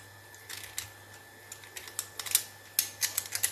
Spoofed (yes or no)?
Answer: no